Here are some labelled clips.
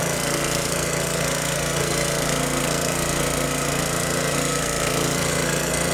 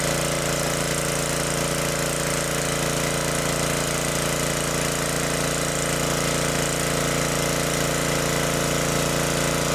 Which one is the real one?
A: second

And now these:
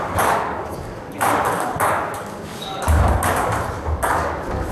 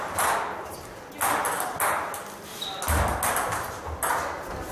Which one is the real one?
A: second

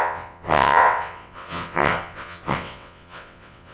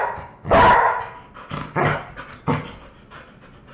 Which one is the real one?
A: second